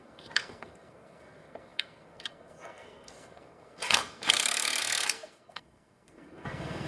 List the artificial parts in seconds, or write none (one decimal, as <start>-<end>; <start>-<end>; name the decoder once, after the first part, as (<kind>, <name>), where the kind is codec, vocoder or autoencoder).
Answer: 0.0-6.9 (codec, SNAC)